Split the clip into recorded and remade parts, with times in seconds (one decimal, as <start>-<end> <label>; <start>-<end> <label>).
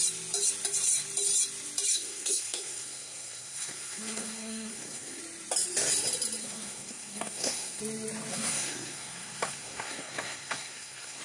0.0-1.9 recorded; 1.9-5.2 remade; 5.2-6.4 recorded; 6.4-7.8 remade; 7.8-8.3 recorded; 8.3-11.2 remade